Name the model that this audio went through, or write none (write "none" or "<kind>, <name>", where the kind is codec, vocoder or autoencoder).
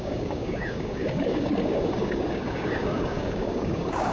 codec, DAC